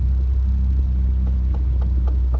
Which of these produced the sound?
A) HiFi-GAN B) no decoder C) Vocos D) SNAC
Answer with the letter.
B